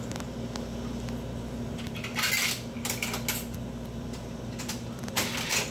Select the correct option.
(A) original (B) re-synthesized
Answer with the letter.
A